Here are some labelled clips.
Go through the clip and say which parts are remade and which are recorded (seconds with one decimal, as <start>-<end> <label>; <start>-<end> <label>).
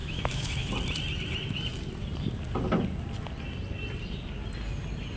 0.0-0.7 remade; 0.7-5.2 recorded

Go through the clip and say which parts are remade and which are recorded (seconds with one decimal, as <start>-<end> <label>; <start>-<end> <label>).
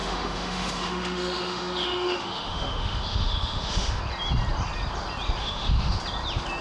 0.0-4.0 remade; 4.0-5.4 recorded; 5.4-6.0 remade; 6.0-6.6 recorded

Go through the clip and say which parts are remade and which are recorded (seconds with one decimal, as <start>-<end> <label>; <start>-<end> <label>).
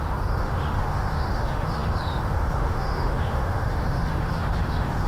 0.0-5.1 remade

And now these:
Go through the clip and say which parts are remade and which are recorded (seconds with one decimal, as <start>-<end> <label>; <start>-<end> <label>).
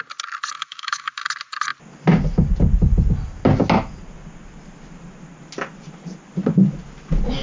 0.0-0.6 recorded; 0.6-1.1 remade; 1.1-7.4 recorded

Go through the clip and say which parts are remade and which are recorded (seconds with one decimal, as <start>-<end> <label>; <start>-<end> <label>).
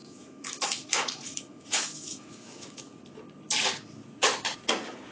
0.0-2.8 remade; 2.8-5.1 recorded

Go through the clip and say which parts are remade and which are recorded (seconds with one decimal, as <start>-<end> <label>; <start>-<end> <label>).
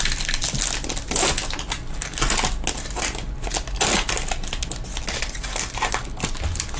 0.0-6.8 recorded